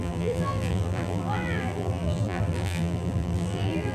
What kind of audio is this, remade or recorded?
remade